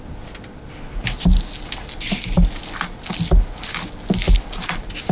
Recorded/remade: recorded